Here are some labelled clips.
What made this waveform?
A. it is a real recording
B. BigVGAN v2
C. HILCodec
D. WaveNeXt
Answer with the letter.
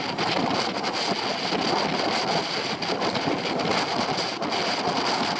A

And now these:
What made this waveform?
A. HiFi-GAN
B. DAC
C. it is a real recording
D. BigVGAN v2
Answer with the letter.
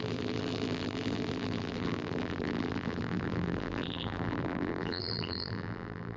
D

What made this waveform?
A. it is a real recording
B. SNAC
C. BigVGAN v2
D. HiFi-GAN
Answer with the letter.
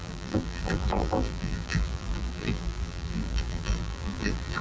C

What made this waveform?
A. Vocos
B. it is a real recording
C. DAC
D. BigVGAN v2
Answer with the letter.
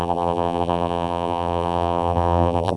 D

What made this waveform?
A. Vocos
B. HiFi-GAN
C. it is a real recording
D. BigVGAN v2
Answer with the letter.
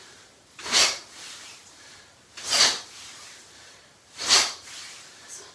D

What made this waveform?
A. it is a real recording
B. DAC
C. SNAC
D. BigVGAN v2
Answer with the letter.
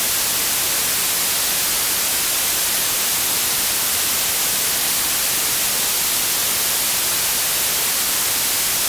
A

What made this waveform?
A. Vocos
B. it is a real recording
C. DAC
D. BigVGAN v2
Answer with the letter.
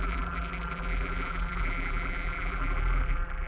D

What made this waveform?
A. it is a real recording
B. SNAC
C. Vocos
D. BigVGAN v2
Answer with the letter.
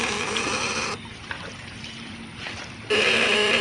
D